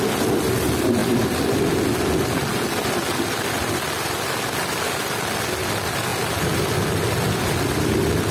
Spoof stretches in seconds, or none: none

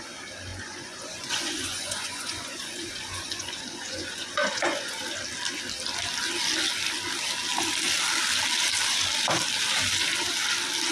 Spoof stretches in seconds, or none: 0.5-5.0 (vocoder, Vocos)

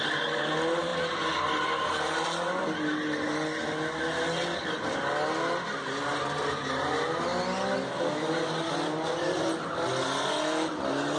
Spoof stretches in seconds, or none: none

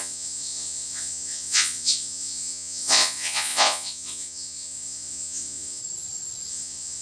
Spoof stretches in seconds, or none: 0.0-5.8 (vocoder, Vocos); 6.5-7.0